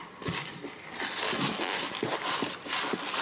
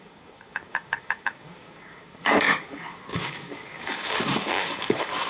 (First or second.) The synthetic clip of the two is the second